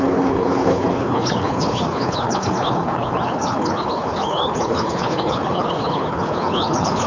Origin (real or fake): fake